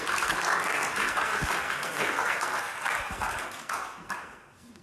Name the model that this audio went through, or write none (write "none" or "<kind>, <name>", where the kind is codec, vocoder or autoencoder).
codec, SNAC